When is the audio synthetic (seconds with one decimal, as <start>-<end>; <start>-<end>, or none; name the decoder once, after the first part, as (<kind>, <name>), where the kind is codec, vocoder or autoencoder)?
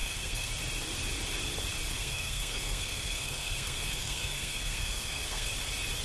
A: 0.0-0.5 (codec, SNAC); 1.9-5.5